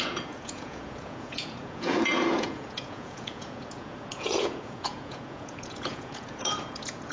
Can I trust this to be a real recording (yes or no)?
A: no